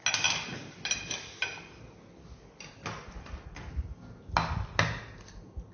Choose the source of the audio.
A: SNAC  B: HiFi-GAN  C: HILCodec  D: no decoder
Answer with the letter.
D